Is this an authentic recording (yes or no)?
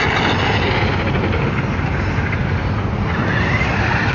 yes